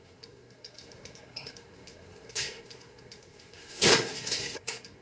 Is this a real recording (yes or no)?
no